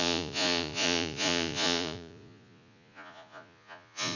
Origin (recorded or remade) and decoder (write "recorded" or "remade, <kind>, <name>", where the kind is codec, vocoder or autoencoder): remade, vocoder, Vocos